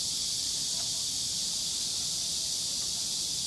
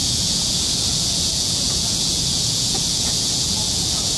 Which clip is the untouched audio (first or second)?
first